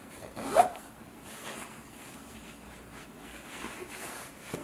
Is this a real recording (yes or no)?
no